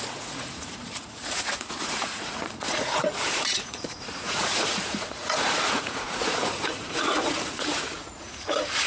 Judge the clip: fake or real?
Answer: fake